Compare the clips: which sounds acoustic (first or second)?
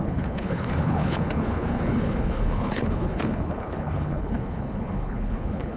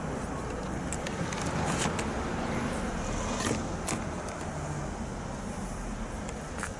second